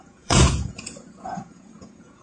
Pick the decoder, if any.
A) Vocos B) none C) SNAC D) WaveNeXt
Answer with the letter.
A